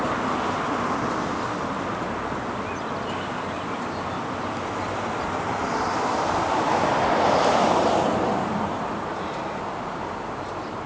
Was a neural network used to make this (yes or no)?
no